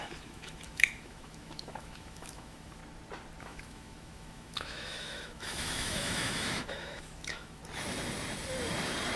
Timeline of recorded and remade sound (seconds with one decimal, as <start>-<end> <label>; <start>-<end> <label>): 0.0-2.8 remade; 2.8-3.4 recorded; 3.4-7.6 remade; 7.6-9.2 recorded